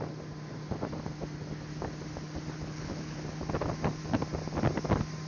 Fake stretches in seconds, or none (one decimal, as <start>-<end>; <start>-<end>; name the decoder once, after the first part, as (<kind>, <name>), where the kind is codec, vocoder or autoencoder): 2.6-3.2 (codec, HILCodec)